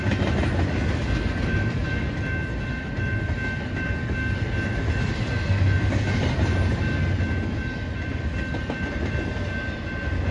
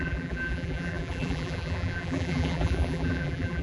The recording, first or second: first